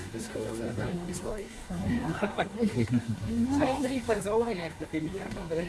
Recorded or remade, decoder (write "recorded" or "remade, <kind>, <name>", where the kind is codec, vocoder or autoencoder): remade, codec, SNAC